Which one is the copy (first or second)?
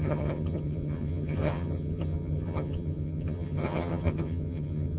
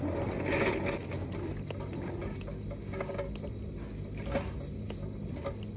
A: first